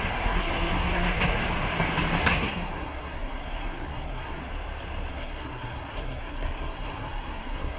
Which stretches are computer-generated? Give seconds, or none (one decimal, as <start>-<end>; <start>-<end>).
0.0-1.4; 2.2-4.4; 5.1-7.8